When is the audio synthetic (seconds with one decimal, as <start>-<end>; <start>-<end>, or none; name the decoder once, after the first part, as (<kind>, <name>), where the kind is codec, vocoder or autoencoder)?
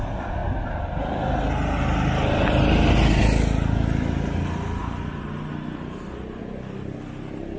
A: none